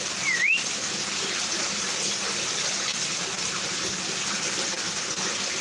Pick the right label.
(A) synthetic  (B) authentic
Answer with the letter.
B